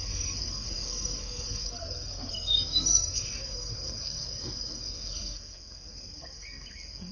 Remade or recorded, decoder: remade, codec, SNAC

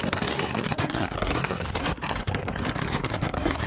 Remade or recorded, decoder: remade, codec, SNAC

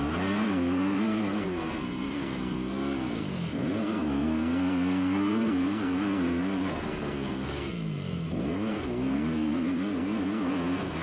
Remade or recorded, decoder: remade, codec, SNAC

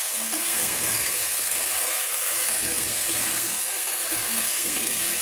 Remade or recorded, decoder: remade, codec, SNAC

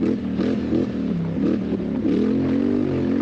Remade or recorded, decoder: recorded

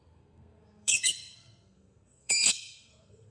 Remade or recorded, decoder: remade, codec, SNAC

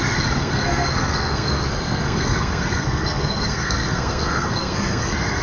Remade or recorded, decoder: remade, codec, SNAC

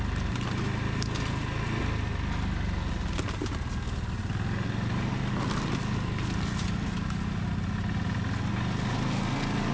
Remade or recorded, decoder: recorded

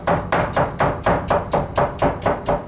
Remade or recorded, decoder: recorded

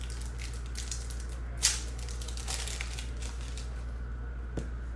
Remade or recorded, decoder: recorded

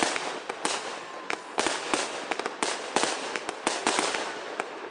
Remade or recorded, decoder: recorded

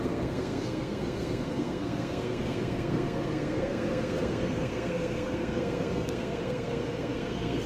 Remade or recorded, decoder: remade, codec, SNAC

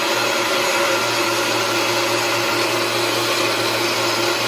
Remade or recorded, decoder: recorded